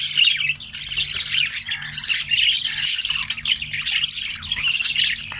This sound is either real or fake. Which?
real